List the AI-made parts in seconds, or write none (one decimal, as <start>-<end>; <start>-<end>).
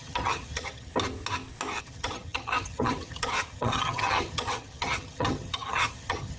0.0-0.9; 1.8-6.4